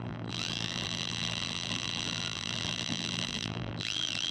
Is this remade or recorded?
remade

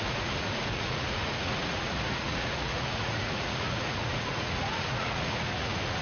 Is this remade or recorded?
remade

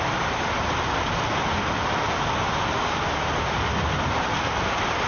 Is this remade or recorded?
recorded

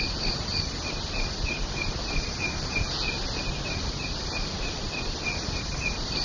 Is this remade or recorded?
recorded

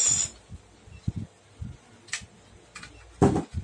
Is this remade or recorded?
recorded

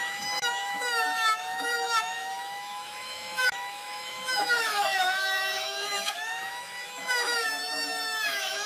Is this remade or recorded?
remade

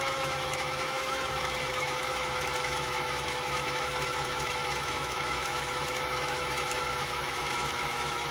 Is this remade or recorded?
remade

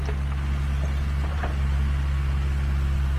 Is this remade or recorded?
recorded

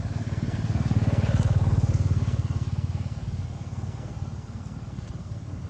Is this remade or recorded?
remade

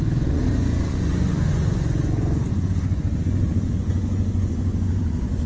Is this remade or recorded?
remade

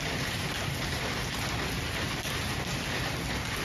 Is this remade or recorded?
recorded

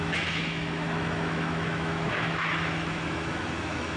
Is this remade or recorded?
remade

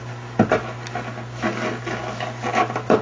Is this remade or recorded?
recorded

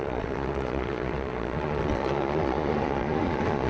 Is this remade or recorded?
remade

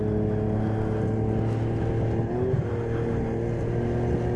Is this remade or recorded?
recorded